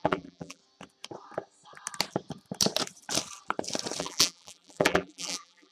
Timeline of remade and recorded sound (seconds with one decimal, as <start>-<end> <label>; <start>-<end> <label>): 0.0-0.6 remade; 0.6-4.0 recorded; 4.0-5.7 remade